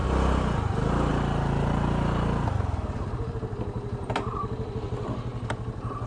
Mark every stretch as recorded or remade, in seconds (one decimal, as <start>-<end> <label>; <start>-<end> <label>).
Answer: 0.0-6.1 recorded